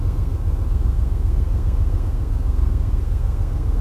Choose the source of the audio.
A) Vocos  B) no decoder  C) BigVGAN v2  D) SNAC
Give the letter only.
D